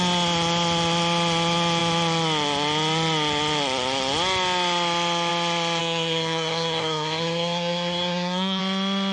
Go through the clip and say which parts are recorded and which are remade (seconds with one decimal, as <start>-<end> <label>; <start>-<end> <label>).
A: 0.0-5.8 recorded; 5.8-8.6 remade; 8.6-9.1 recorded

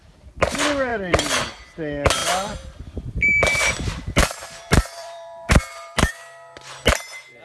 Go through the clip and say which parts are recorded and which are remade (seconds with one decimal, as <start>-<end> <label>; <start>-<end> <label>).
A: 0.0-0.9 recorded; 0.9-1.5 remade; 1.5-2.2 recorded; 2.2-6.1 remade; 6.1-7.4 recorded

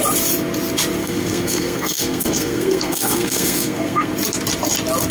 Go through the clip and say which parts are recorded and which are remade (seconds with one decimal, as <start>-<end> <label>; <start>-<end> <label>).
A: 0.0-1.0 recorded; 1.0-4.1 remade; 4.1-5.1 recorded

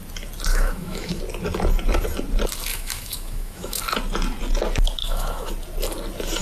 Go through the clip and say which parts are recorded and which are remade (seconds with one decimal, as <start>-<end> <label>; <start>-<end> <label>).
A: 0.0-0.5 recorded; 0.5-1.2 remade; 1.2-2.7 recorded; 2.7-3.8 remade; 3.8-5.0 recorded; 5.0-5.5 remade; 5.5-6.4 recorded

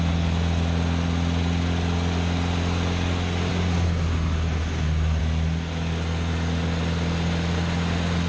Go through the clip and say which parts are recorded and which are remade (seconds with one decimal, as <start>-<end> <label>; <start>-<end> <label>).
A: 0.0-8.3 recorded

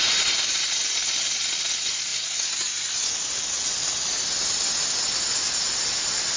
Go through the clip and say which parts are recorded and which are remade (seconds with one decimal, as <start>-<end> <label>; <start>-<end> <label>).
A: 0.0-6.4 recorded